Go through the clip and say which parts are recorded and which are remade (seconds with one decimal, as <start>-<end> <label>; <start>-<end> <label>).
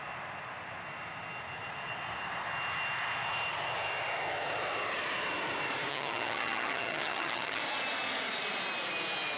0.0-5.9 recorded; 5.9-7.6 remade; 7.6-9.4 recorded